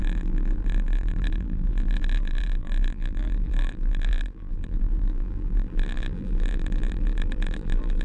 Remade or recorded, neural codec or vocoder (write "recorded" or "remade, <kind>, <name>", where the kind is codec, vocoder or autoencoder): remade, vocoder, BigVGAN v2